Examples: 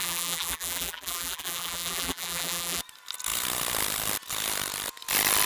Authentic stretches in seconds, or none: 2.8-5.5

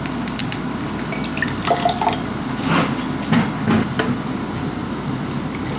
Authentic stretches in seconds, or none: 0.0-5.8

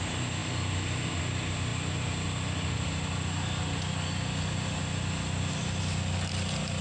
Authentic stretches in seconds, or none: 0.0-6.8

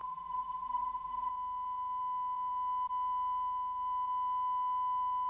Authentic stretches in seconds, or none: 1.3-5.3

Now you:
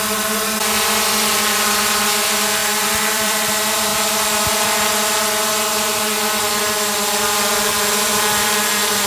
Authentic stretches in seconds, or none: 0.0-2.6; 3.5-9.1

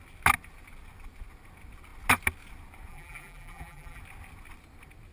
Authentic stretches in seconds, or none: 0.0-2.9; 4.0-5.1

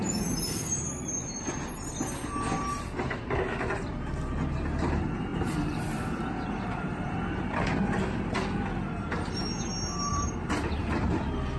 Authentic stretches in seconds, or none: 0.0-5.3; 7.4-10.1; 10.8-11.6